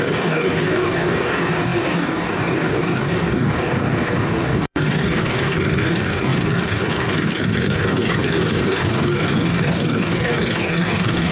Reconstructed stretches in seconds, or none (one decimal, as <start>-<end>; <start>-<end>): 0.0-11.3